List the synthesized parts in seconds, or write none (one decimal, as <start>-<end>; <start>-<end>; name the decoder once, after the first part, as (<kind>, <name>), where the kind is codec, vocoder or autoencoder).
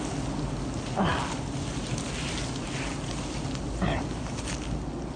none